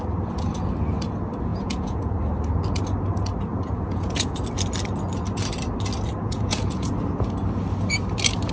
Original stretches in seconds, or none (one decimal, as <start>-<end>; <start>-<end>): 0.0-1.5; 2.1-3.5; 4.4-6.2; 6.9-8.5